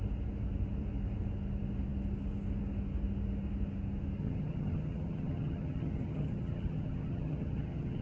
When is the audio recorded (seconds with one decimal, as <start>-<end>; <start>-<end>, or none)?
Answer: 0.0-4.2